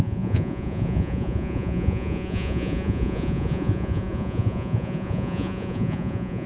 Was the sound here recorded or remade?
remade